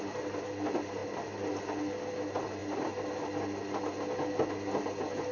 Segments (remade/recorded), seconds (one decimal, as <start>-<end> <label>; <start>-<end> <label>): 0.0-1.0 recorded; 1.0-1.6 remade; 1.6-5.3 recorded